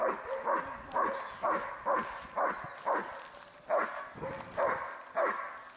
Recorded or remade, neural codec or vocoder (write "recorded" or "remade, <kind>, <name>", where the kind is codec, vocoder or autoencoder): recorded